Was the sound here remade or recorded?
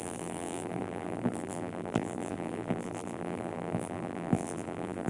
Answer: remade